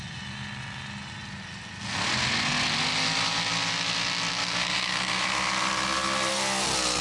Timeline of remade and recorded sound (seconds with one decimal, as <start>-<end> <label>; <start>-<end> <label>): 0.0-4.4 recorded; 4.4-5.4 remade; 5.4-7.0 recorded